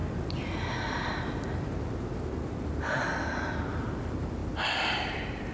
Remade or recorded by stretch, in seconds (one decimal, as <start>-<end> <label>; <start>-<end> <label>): 0.0-5.5 recorded